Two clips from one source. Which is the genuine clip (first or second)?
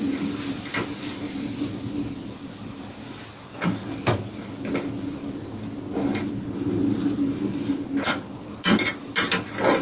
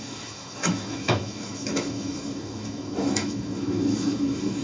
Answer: first